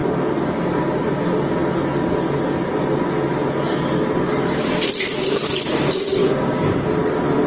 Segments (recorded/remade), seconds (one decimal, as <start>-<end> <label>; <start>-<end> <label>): 0.0-6.2 recorded; 6.2-6.9 remade; 6.9-7.5 recorded